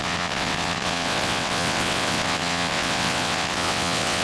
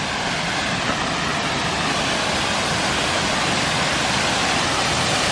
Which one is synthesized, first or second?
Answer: first